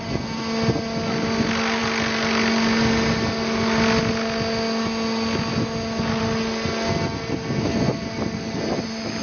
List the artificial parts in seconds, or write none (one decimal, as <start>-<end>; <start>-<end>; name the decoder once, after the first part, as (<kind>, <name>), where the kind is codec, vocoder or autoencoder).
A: none